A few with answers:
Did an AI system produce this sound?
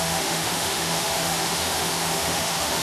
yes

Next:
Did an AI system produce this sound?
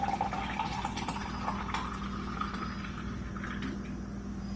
no